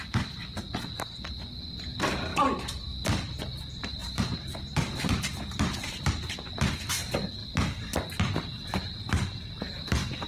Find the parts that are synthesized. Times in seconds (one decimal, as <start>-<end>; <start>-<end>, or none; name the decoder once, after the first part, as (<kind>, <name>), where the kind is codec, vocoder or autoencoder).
2.3-3.4 (vocoder, BigVGAN v2); 4.0-5.9